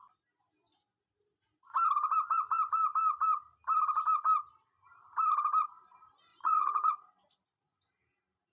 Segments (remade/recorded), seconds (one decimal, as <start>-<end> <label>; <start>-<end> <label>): 0.0-6.3 recorded; 6.3-6.9 remade; 6.9-8.5 recorded